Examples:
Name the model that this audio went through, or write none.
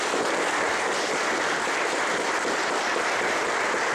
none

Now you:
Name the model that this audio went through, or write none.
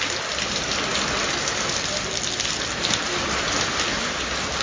none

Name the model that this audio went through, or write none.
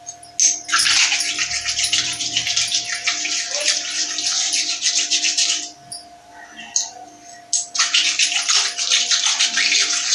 none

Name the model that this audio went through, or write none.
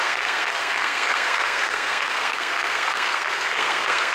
codec, SNAC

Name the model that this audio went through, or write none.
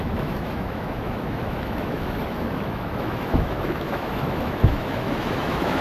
autoencoder, DAC-VAE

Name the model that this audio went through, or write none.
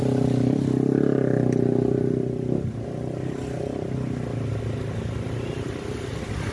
none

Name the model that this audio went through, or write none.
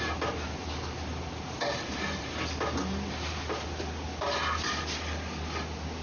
none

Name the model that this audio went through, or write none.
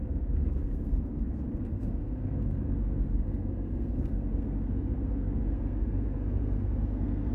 codec, SNAC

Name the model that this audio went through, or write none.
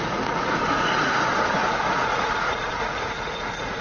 vocoder, Vocos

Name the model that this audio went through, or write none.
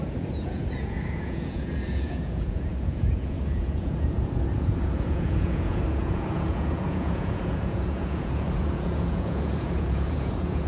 vocoder, Vocos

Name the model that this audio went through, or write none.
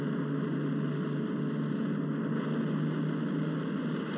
none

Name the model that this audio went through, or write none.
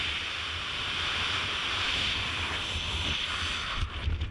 vocoder, BigVGAN v2